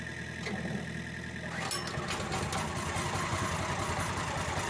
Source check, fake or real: real